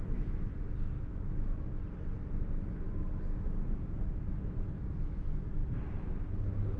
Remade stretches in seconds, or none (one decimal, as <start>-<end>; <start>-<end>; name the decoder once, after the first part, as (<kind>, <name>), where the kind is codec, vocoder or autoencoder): 0.0-0.5 (autoencoder, DAC-VAE); 1.0-1.8; 4.4-5.6